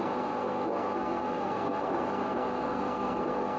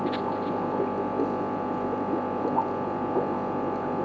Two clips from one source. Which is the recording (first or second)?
second